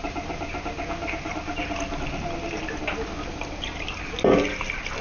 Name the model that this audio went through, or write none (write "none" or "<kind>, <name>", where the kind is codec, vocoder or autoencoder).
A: none